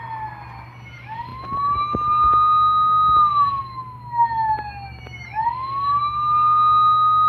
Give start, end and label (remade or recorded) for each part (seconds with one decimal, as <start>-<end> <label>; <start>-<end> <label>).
0.0-7.3 recorded